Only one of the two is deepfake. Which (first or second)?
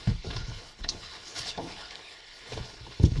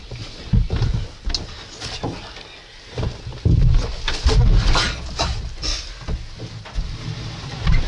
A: first